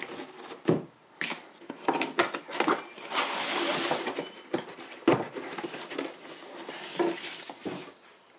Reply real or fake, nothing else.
real